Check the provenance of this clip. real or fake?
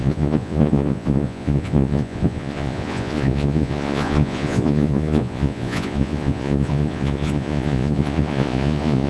fake